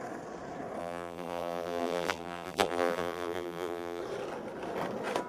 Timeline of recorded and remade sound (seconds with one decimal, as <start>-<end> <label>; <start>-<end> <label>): 0.0-0.8 recorded; 0.8-4.0 remade; 4.0-5.3 recorded